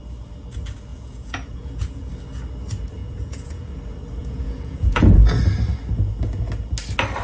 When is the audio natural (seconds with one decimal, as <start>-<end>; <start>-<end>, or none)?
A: 0.0-0.9; 2.1-3.0; 3.7-4.2; 5.4-7.2

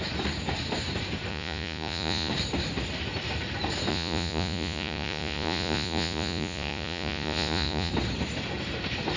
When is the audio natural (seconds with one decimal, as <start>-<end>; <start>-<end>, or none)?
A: 0.0-1.3; 2.3-3.9; 7.9-9.2

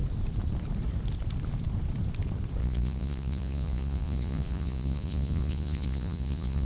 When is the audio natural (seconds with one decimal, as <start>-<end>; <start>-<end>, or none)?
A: 0.0-2.6

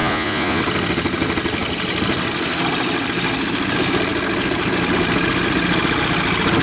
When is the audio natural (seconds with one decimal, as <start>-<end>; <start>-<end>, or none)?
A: 0.6-6.6

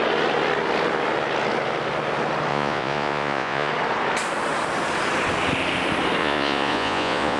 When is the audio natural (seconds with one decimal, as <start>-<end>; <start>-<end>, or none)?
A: 0.0-2.5; 3.7-6.2

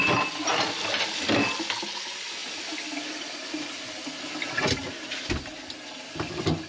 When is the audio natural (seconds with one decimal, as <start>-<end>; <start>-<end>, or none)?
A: 0.0-6.7

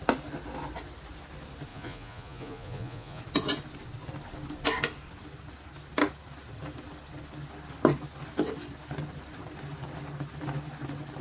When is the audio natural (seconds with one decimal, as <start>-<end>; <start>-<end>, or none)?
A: 0.0-1.7; 3.2-11.2

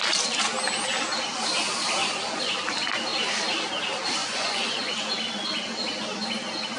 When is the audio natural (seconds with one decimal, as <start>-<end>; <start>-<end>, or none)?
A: 0.0-2.0; 2.5-4.2; 4.9-6.8